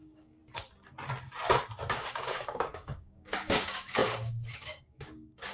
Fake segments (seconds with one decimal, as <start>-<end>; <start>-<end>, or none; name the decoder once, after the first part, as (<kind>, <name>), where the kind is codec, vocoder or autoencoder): 0.0-0.4 (codec, DAC); 1.9-5.5